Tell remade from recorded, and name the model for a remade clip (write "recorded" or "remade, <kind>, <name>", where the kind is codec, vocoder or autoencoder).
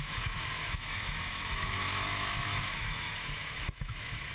remade, autoencoder, DAC-VAE